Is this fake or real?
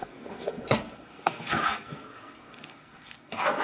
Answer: fake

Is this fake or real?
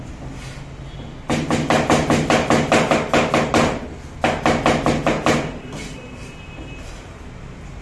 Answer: real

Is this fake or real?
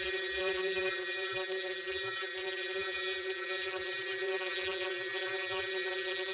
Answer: fake